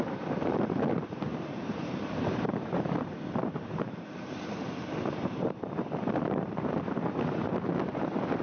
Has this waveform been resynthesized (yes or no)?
yes